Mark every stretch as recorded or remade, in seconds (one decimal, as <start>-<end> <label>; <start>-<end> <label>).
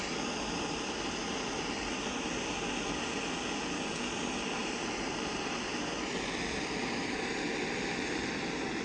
0.0-1.2 recorded; 1.2-2.4 remade; 2.4-4.6 recorded; 4.6-5.4 remade; 5.4-6.8 recorded; 6.8-7.5 remade; 7.5-8.8 recorded